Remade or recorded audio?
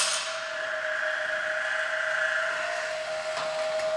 recorded